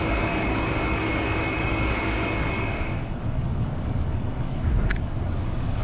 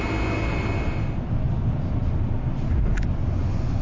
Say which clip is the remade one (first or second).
first